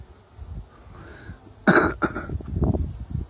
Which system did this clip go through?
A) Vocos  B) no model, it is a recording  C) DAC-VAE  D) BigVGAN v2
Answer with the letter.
B